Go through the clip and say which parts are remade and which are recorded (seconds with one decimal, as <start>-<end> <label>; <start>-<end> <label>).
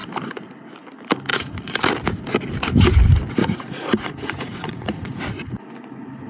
0.0-1.3 recorded; 1.3-1.8 remade; 1.8-3.4 recorded; 3.4-5.2 remade; 5.2-6.3 recorded